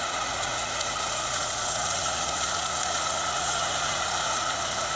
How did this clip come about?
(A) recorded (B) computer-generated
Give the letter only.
B